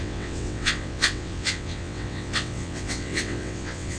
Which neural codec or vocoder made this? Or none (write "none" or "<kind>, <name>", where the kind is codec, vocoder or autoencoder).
vocoder, WaveNeXt